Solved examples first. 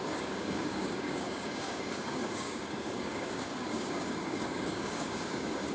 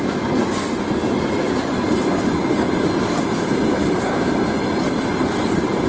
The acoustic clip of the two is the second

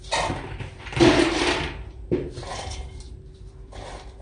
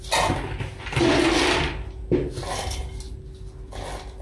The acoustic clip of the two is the second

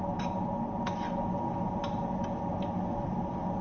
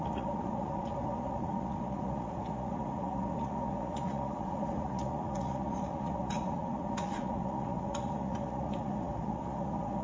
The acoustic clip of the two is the first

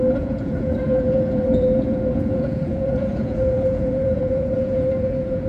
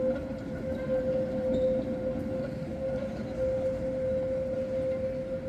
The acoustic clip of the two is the second